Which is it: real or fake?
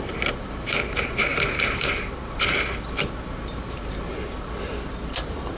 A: fake